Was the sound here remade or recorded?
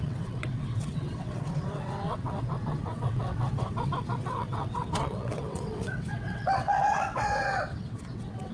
remade